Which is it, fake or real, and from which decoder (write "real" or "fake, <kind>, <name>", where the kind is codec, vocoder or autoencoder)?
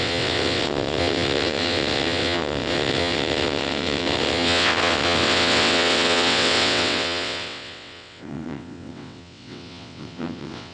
fake, vocoder, WaveNeXt